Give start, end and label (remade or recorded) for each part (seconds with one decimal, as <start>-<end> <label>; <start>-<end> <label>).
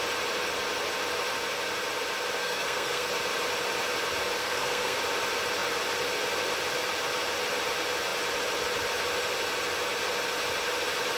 0.0-2.4 recorded; 2.4-3.1 remade; 3.1-4.4 recorded; 4.4-5.0 remade; 5.0-11.2 recorded